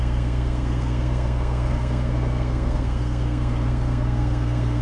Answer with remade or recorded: remade